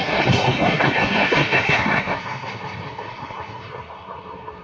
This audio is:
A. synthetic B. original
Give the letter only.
A